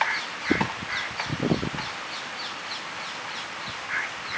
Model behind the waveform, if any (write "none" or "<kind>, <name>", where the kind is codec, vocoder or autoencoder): none